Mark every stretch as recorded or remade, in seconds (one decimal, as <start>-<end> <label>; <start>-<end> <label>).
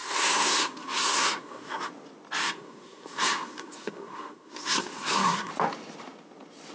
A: 0.0-1.9 remade; 1.9-2.4 recorded; 2.4-5.5 remade; 5.5-6.7 recorded